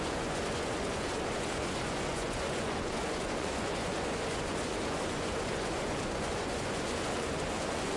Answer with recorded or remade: remade